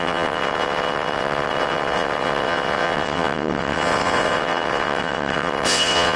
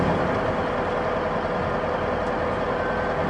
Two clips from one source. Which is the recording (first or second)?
second